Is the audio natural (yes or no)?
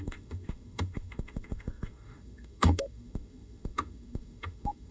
no